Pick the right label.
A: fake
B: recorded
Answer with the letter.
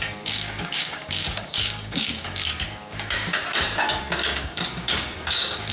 A